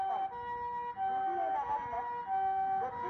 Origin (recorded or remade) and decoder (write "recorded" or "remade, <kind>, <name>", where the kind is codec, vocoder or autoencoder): recorded